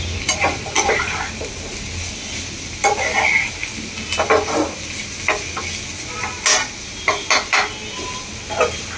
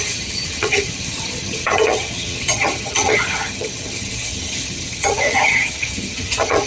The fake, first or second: second